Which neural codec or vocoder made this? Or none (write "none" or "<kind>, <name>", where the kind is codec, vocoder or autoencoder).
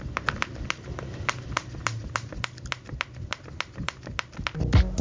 none